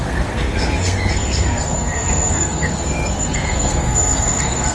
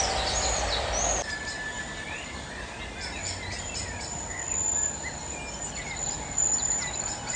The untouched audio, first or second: second